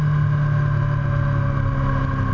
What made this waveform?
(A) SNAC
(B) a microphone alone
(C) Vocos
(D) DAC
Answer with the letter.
B